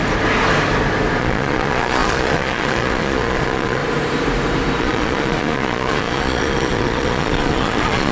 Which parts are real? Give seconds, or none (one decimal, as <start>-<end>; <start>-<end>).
0.0-1.2; 3.8-4.8